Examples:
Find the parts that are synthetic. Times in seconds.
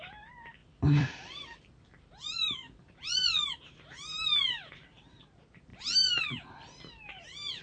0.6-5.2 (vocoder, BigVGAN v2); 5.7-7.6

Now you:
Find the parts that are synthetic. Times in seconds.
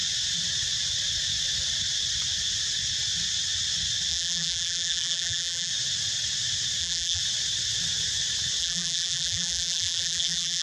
4.1-5.7 (vocoder, BigVGAN v2); 6.8-7.2; 8.6-10.6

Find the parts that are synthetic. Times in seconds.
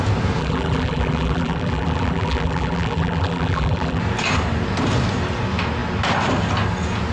0.4-4.0 (vocoder, BigVGAN v2)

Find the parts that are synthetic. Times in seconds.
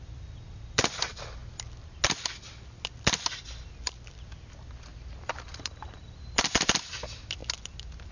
0.0-1.4 (vocoder, BigVGAN v2); 2.9-4.9; 5.5-7.4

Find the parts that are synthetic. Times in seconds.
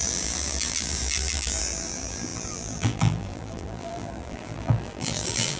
0.0-5.6 (vocoder, BigVGAN v2)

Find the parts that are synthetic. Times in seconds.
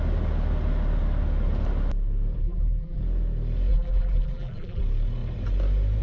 2.4-3.0 (vocoder, BigVGAN v2); 3.7-4.8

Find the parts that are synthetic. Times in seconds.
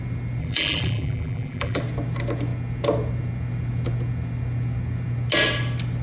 0.4-1.8 (vocoder, BigVGAN v2)